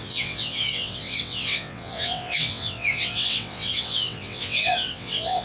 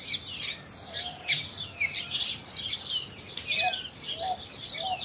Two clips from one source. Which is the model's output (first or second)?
first